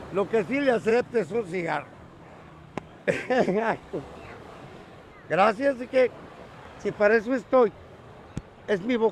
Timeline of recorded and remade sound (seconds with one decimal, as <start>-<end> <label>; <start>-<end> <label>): 0.0-0.9 recorded; 0.9-5.0 remade; 5.0-6.4 recorded; 6.4-8.2 remade; 8.2-9.1 recorded